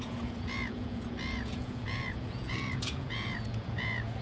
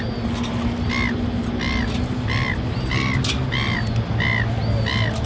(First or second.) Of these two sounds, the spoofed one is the first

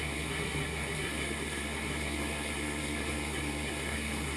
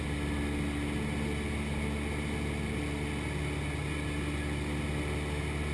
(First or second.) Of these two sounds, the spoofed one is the first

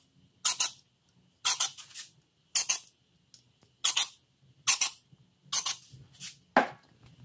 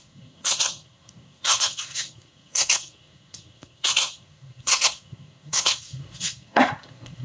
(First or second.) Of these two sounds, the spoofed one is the second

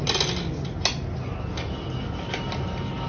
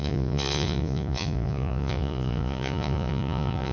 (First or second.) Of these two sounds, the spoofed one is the second